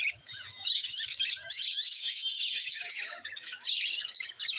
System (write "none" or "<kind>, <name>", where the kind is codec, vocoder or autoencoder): autoencoder, DAC-VAE